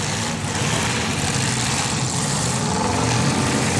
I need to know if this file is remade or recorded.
remade